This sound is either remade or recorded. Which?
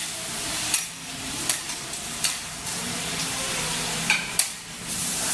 remade